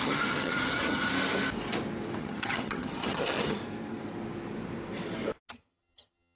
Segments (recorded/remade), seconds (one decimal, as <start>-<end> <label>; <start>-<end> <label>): 0.0-1.1 remade; 1.1-2.2 recorded; 2.2-3.6 remade; 3.6-5.5 recorded; 5.5-6.3 remade